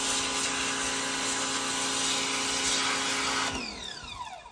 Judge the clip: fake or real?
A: real